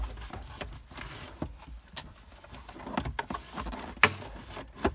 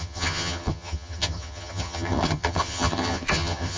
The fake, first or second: second